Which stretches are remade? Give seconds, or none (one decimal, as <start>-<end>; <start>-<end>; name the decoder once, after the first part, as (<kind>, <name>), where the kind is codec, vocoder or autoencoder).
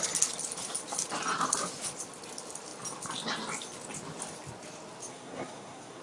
5.1-6.0 (codec, SNAC)